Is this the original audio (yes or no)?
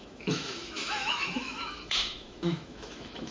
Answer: no